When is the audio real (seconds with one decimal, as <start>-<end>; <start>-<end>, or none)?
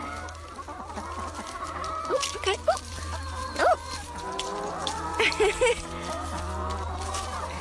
0.0-7.6